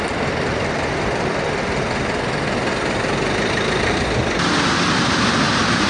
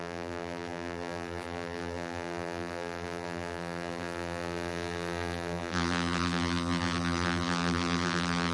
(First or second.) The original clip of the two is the first